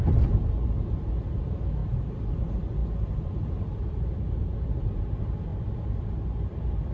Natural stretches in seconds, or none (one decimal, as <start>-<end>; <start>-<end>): 0.0-1.8; 2.3-5.5